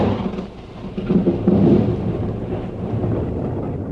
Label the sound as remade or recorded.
recorded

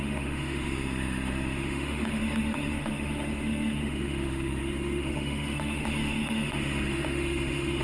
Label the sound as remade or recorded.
remade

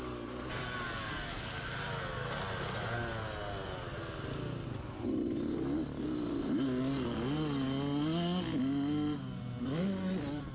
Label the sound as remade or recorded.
recorded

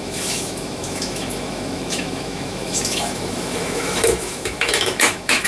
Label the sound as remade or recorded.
remade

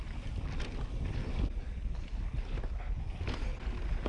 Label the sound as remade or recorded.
recorded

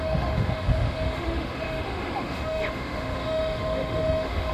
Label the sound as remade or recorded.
remade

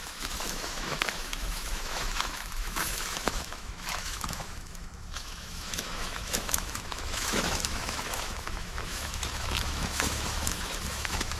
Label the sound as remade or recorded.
remade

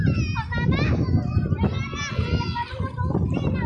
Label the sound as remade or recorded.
recorded